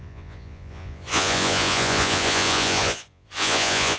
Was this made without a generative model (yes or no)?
no